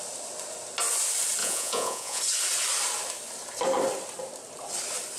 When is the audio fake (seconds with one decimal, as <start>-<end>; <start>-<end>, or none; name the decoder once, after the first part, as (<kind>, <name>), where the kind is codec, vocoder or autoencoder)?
1.4-2.2 (vocoder, Vocos)

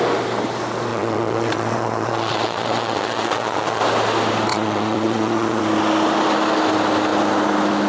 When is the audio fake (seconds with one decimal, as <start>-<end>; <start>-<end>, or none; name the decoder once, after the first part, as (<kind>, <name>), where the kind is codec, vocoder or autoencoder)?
0.9-3.8 (vocoder, Vocos); 4.5-5.6

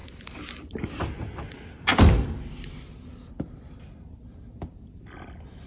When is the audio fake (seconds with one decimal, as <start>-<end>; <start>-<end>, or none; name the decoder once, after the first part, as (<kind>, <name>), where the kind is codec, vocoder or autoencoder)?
none